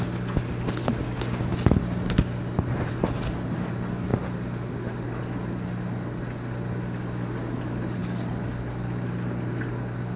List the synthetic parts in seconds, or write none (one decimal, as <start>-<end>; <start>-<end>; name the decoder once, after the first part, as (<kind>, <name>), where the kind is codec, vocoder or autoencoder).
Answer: none